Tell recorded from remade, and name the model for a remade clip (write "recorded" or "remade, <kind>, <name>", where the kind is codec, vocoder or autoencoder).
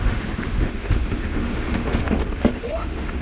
remade, autoencoder, DAC-VAE